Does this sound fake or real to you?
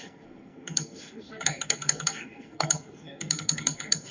fake